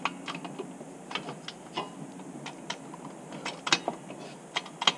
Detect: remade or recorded recorded